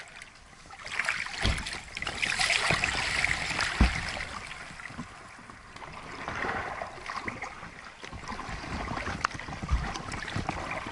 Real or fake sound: real